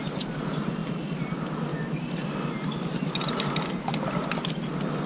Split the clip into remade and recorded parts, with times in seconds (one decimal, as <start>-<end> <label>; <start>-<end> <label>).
0.0-5.1 recorded